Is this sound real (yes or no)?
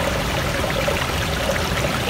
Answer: yes